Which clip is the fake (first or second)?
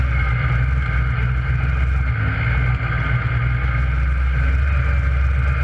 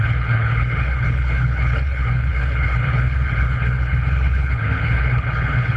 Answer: second